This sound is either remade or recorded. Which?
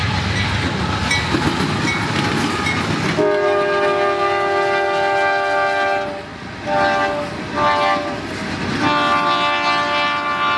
recorded